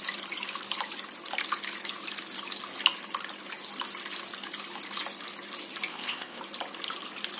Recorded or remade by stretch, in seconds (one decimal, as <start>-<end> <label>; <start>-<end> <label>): 0.0-5.9 recorded; 5.9-6.4 remade; 6.4-7.4 recorded